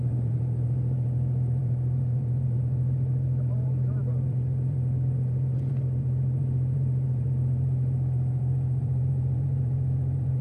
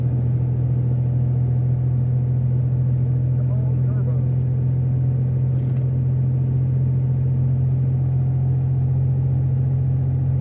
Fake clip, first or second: first